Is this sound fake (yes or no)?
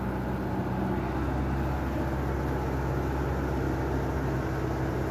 no